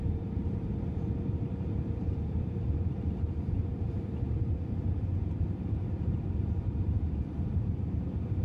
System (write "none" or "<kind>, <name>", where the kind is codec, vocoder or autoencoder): vocoder, BigVGAN v2